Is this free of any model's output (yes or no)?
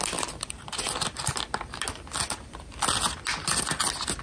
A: yes